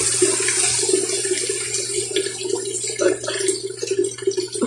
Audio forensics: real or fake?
real